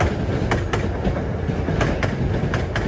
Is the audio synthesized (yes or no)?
no